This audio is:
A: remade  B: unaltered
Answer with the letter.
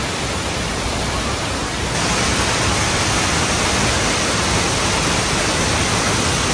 B